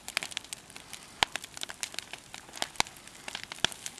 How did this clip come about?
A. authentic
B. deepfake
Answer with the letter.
A